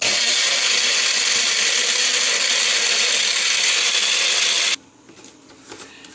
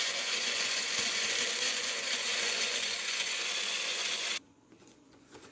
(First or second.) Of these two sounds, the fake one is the second